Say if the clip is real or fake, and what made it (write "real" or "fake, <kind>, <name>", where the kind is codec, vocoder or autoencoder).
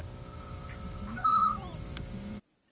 real